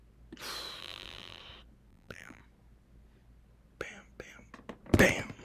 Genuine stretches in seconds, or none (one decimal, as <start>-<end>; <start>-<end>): 0.0-0.8; 1.4-1.9; 2.4-5.4